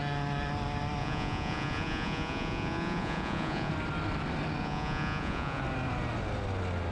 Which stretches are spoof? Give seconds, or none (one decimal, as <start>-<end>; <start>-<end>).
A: 1.0-3.7; 4.6-5.6